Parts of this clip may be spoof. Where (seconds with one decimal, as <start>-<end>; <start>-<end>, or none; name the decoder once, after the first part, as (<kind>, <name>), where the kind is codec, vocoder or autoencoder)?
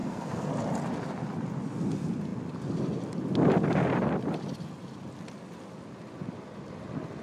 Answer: 0.0-0.5 (codec, SNAC)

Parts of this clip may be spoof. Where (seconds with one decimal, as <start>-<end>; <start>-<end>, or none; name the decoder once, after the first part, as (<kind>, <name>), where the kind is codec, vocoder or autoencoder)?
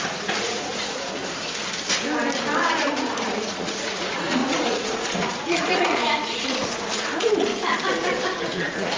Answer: 0.0-1.2 (vocoder, Vocos); 2.6-7.5; 8.4-9.0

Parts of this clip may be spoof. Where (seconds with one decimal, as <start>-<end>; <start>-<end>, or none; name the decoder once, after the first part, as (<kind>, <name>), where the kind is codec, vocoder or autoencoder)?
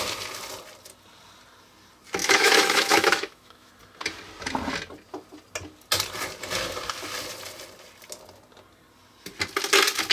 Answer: 2.2-3.7 (autoencoder, DAC-VAE)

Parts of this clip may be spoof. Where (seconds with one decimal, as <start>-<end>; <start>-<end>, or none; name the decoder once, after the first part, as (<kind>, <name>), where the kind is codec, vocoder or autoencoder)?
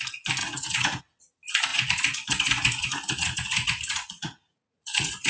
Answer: 0.4-1.0 (vocoder, Vocos); 1.7-5.3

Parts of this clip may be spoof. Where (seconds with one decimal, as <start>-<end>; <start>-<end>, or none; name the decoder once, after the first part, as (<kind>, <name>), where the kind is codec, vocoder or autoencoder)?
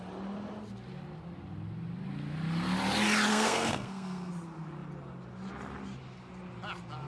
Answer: 3.3-4.3 (codec, SNAC)